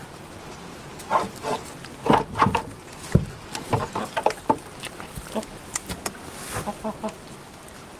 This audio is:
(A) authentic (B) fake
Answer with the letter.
A